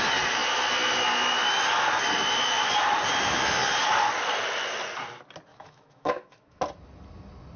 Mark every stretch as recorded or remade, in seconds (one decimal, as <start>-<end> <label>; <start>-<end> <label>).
0.0-5.5 recorded; 5.5-6.6 remade; 6.6-7.6 recorded